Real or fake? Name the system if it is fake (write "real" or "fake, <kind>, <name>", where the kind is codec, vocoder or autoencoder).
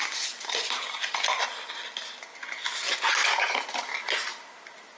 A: real